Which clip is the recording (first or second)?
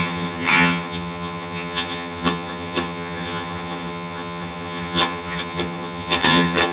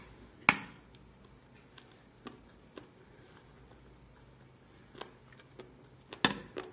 second